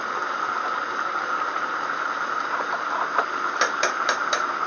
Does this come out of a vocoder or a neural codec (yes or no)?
no